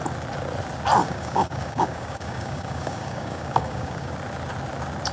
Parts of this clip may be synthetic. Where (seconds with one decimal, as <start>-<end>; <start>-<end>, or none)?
1.0-4.1